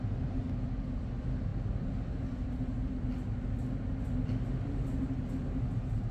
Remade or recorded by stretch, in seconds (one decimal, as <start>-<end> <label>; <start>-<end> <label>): 0.0-6.1 recorded